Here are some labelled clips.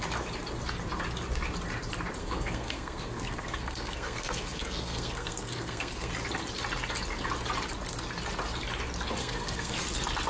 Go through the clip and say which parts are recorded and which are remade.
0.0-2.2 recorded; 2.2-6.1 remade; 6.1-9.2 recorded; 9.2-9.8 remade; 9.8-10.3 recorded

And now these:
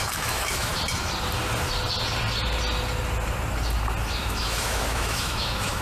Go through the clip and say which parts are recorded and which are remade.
0.0-0.7 remade; 0.7-4.2 recorded; 4.2-5.8 remade